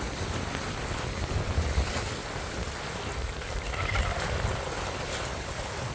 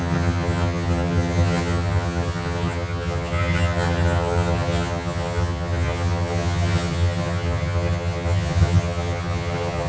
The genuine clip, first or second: first